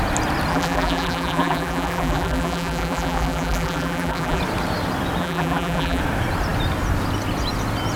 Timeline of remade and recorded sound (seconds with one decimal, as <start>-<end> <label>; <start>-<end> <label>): 0.0-0.5 recorded; 0.5-4.4 remade; 4.4-5.2 recorded; 5.2-6.0 remade; 6.0-8.0 recorded